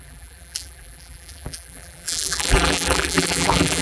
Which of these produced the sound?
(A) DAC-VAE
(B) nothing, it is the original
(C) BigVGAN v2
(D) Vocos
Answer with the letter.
C